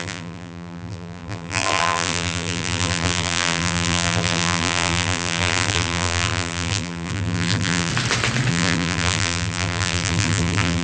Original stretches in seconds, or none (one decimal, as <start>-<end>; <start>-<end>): 7.9-8.5